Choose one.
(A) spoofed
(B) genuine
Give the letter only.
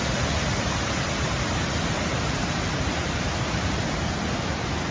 B